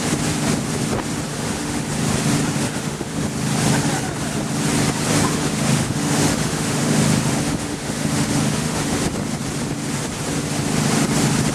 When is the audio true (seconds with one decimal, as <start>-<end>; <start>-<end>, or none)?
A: 0.0-1.3; 1.9-2.6; 3.2-5.3; 9.0-11.5